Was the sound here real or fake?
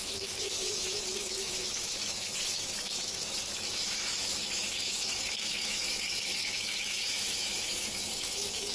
fake